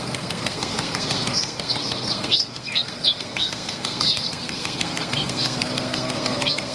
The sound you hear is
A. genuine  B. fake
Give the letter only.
B